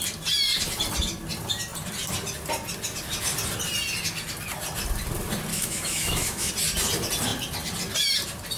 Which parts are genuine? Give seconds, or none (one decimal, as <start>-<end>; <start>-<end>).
0.0-5.5; 6.5-8.6